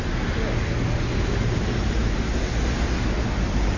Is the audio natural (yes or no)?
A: yes